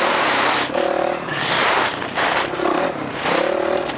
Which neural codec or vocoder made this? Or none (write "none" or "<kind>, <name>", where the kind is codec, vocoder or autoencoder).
vocoder, BigVGAN v2